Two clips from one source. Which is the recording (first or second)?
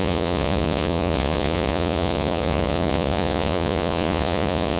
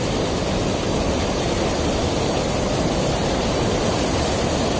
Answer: second